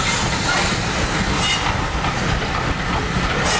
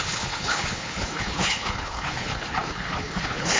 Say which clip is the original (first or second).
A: first